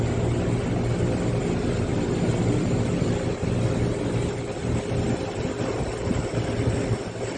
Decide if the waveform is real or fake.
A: real